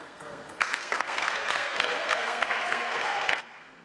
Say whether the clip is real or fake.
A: fake